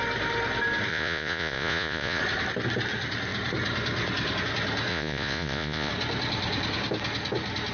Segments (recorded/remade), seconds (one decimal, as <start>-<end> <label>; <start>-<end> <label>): 0.0-0.9 recorded; 0.9-2.2 remade; 2.2-4.9 recorded; 4.9-5.9 remade; 5.9-7.7 recorded